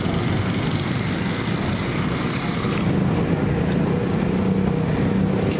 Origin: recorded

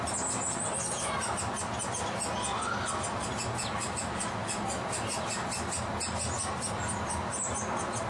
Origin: recorded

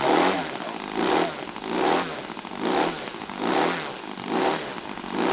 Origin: recorded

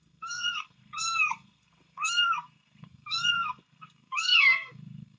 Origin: remade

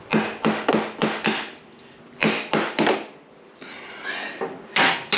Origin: recorded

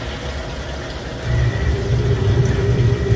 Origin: recorded